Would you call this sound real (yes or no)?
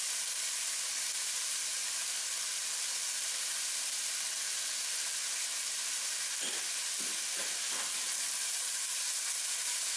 yes